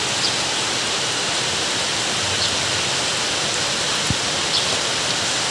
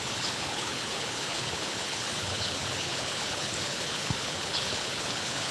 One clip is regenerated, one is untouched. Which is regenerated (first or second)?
second